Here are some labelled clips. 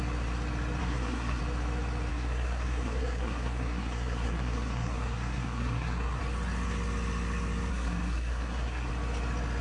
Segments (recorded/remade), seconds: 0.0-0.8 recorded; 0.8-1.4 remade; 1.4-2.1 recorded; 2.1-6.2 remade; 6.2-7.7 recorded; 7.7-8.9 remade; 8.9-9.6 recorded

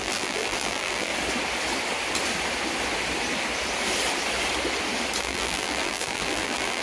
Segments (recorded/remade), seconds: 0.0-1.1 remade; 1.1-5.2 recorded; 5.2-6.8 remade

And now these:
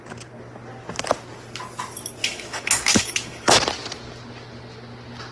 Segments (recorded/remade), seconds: 0.0-2.2 recorded; 2.2-3.6 remade; 3.6-5.3 recorded

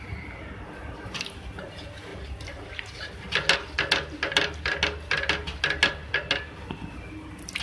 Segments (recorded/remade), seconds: 0.0-7.6 recorded